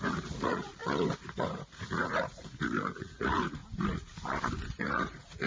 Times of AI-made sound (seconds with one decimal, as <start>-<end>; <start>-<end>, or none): 0.0-0.8; 1.4-3.6; 4.8-5.5